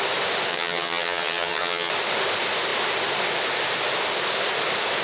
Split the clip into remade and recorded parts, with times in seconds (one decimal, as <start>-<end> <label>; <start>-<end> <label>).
0.0-0.5 recorded; 0.5-1.9 remade; 1.9-5.0 recorded